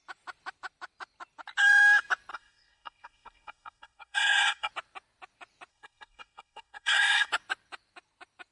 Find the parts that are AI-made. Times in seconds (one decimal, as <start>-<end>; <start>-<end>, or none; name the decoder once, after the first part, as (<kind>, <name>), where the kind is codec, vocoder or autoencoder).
2.3-4.7 (codec, SNAC); 5.7-7.3